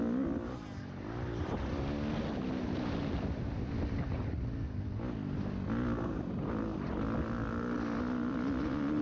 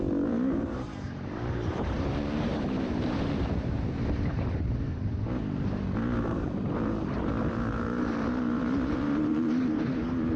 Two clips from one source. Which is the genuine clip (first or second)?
first